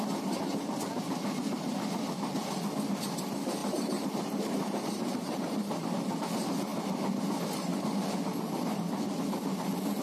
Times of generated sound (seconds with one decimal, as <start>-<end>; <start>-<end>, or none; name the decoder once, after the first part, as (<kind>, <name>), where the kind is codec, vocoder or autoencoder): 3.6-6.2 (vocoder, BigVGAN v2)